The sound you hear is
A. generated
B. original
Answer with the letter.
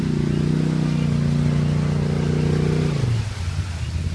B